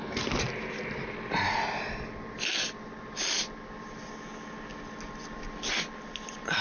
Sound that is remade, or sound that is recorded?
recorded